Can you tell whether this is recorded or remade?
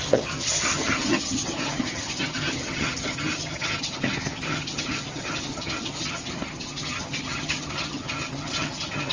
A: remade